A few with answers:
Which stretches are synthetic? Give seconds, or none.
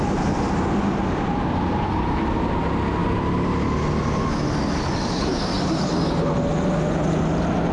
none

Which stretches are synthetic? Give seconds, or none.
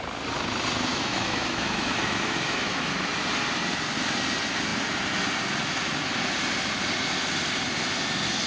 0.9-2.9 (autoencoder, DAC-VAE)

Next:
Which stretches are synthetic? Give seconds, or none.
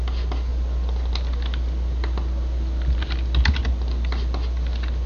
none